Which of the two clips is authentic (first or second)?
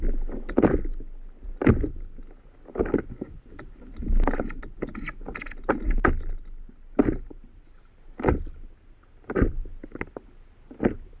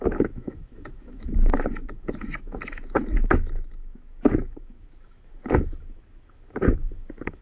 first